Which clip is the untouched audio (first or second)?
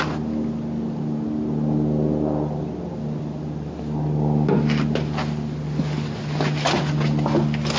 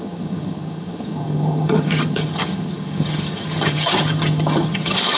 first